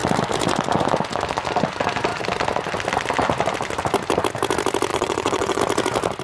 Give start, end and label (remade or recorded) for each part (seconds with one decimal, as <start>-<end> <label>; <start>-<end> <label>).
0.0-4.9 recorded; 4.9-5.6 remade; 5.6-6.2 recorded